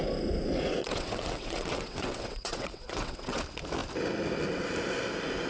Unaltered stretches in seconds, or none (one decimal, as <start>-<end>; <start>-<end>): 0.0-0.8; 3.4-5.5